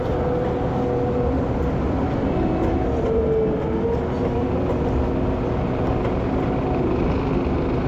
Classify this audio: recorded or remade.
recorded